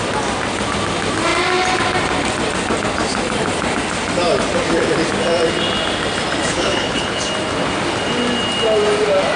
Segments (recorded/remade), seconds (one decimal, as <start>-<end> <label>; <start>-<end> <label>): 0.0-6.5 recorded; 6.5-7.2 remade; 7.2-9.4 recorded